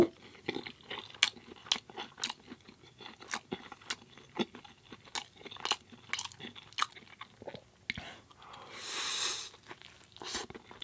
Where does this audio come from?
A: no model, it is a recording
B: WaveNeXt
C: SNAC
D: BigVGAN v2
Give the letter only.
A